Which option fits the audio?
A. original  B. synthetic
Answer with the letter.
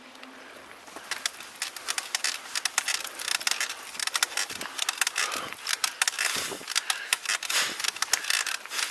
A